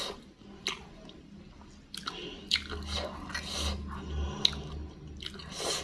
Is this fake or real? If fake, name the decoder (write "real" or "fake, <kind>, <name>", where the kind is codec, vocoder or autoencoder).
real